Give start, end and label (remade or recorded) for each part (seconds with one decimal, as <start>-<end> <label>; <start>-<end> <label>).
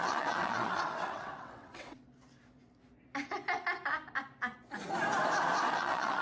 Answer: 0.0-2.0 remade; 2.0-5.7 recorded; 5.7-6.2 remade